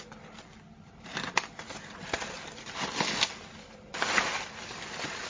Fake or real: real